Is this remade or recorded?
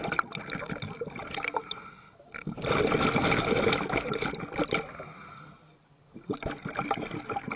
recorded